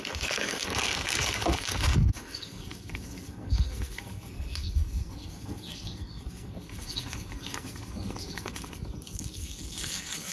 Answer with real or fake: fake